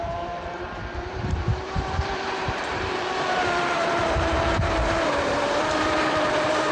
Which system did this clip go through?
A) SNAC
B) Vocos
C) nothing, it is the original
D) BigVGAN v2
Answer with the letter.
D